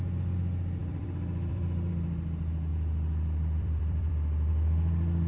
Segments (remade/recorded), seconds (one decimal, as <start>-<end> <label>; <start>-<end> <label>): 0.0-0.8 recorded; 0.8-1.9 remade; 1.9-2.7 recorded; 2.7-4.1 remade; 4.1-5.3 recorded